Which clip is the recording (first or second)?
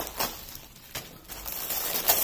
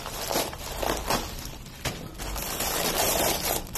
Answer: first